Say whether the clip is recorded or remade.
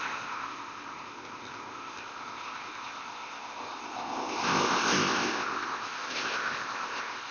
remade